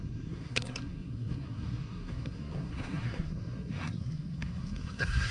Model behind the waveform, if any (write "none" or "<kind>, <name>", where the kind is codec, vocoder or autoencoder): codec, SNAC